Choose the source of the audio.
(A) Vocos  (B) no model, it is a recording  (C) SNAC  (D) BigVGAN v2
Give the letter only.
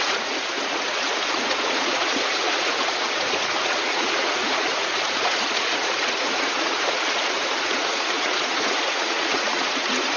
A